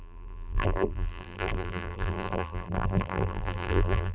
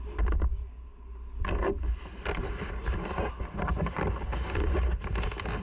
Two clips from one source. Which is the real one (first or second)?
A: second